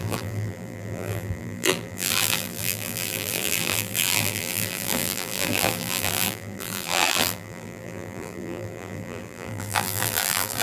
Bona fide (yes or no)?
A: no